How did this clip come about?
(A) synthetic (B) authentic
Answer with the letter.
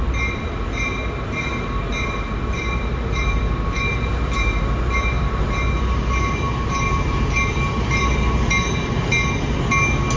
B